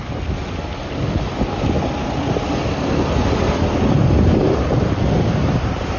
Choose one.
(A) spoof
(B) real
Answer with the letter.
B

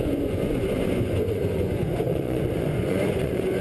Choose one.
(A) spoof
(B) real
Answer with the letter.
A